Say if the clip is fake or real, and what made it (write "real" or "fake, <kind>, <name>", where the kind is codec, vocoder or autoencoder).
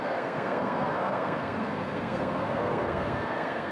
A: fake, codec, SNAC